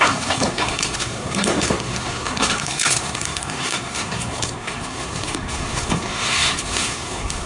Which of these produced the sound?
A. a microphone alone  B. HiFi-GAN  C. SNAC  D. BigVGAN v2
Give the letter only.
C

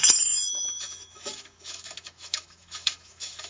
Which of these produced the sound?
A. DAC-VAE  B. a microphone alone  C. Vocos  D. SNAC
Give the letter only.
A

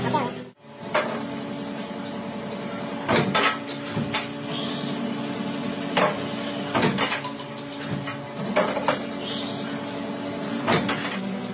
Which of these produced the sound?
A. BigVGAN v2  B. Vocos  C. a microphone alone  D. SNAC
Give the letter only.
C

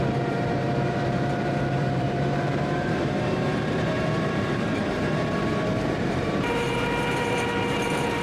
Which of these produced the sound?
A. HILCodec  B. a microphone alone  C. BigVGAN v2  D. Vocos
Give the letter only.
C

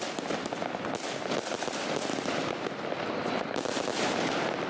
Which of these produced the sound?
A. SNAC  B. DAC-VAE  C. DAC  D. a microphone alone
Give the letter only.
D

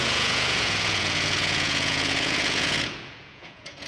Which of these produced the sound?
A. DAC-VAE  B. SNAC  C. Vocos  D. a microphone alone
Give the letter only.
C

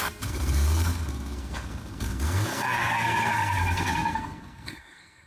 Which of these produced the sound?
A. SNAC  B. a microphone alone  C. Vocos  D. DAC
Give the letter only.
A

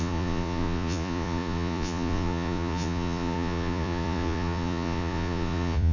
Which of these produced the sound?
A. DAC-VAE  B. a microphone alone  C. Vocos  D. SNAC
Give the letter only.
C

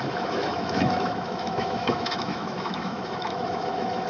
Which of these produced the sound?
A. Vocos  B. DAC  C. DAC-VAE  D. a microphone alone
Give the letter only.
C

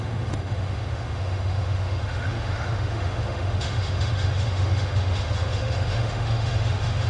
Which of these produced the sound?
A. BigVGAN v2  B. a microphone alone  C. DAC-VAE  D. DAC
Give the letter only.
C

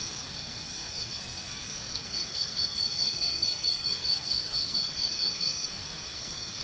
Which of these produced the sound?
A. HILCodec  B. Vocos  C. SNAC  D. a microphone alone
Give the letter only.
C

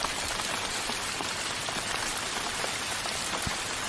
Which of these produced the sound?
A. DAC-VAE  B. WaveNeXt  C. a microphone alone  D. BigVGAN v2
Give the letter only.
D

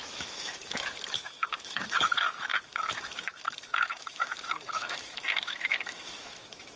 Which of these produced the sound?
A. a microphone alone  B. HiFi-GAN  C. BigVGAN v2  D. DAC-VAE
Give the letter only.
D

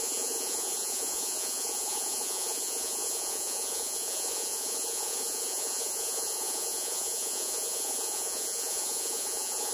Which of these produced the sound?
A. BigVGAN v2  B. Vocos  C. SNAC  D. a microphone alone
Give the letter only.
B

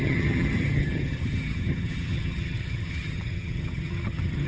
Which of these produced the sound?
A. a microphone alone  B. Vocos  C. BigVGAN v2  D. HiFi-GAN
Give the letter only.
D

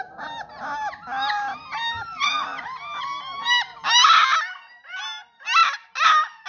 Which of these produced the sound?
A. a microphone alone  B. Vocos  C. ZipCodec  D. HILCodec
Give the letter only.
A